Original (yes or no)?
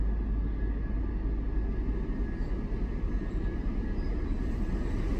yes